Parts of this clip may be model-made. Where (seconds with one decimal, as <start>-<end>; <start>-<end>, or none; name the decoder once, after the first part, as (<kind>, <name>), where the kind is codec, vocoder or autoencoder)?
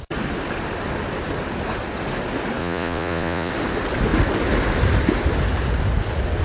2.6-3.5 (vocoder, Vocos)